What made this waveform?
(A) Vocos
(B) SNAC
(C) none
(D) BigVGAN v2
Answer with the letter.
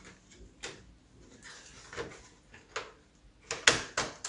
C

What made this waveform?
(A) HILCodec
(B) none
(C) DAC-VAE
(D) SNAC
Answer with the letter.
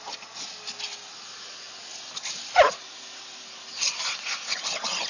B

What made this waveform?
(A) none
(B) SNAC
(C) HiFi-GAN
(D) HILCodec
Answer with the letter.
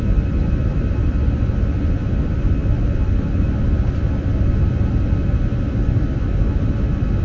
A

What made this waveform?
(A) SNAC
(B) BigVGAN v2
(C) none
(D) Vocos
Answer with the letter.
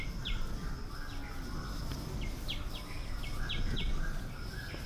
C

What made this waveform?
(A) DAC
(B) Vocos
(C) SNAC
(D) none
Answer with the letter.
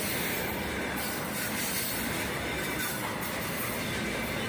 D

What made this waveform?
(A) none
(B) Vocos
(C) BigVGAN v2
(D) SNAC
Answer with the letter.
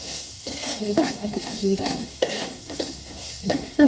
D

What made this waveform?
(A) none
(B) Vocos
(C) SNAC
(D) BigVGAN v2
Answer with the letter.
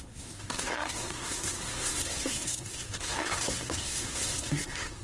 C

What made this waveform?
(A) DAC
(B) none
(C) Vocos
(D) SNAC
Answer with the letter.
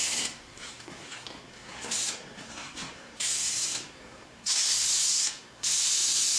D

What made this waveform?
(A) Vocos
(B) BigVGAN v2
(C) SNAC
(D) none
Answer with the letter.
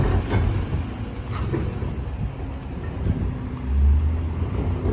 D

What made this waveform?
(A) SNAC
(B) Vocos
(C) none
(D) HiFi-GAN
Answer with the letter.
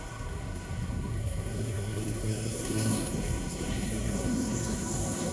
A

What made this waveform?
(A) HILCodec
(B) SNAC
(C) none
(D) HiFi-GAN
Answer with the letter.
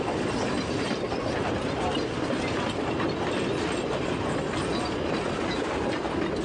C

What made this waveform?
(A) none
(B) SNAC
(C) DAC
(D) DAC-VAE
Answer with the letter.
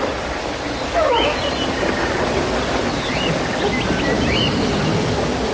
A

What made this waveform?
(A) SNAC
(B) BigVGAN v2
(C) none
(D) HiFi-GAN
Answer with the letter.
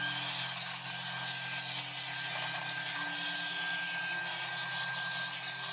C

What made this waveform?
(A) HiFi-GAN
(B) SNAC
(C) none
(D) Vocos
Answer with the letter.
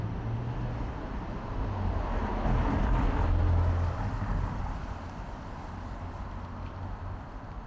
C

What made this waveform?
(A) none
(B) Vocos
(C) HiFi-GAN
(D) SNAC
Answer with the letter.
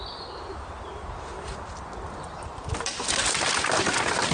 A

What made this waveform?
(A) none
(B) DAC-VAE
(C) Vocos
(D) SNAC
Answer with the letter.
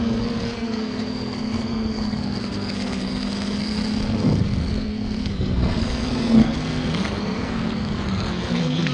D